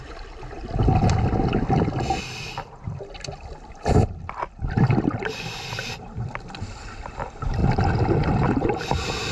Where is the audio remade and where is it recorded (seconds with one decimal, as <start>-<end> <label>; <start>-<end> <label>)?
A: 0.0-9.3 recorded